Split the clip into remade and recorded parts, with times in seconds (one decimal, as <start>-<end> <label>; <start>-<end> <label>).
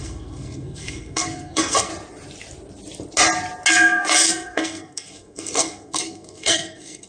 0.0-1.9 remade; 1.9-3.7 recorded; 3.7-7.1 remade